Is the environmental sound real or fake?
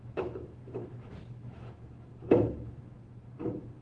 fake